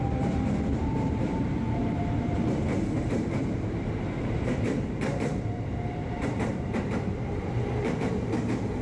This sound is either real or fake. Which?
fake